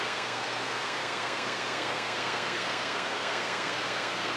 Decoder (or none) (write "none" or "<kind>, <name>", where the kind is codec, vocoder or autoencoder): codec, SNAC